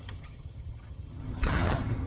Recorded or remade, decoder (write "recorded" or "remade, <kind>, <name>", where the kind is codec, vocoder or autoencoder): remade, vocoder, HiFi-GAN